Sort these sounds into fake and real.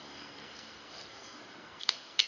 fake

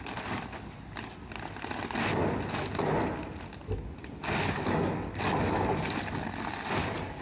real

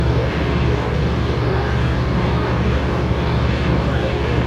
fake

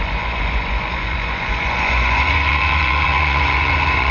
fake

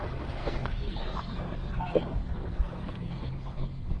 fake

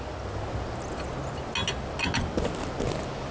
real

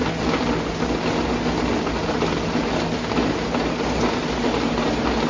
real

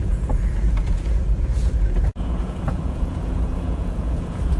fake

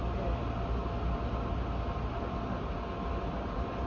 real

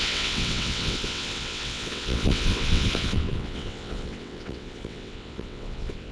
fake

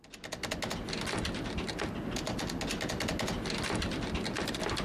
real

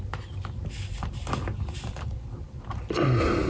real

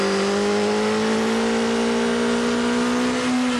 real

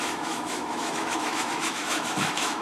fake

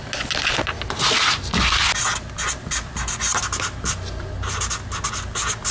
real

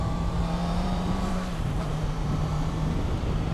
fake